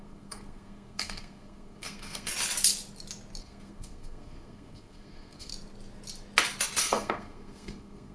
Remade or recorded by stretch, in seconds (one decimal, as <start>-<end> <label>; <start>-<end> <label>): 0.0-2.3 remade; 2.3-3.4 recorded; 3.4-5.5 remade; 5.5-6.8 recorded; 6.8-8.1 remade